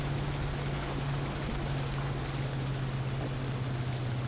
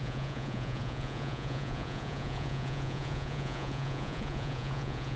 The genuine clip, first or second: first